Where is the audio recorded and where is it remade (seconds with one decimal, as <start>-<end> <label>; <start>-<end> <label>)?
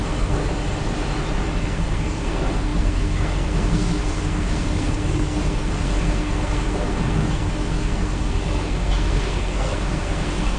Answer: 0.0-0.4 remade; 0.4-1.6 recorded; 1.6-10.6 remade